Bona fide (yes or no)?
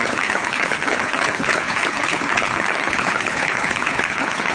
no